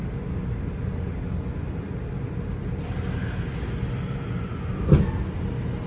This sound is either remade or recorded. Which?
recorded